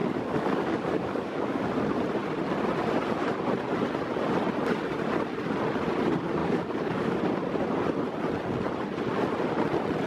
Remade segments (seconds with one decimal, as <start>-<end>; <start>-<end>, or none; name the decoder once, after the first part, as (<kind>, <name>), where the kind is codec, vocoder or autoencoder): 0.0-1.7 (codec, DAC); 6.4-7.2